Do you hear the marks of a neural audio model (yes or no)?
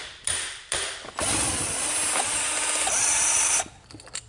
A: no